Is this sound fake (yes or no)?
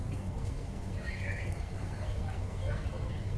yes